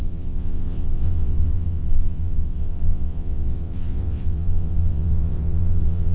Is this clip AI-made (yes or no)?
yes